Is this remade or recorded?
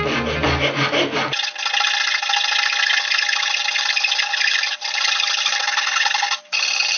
recorded